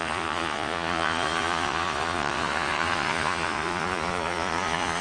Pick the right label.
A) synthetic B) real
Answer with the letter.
A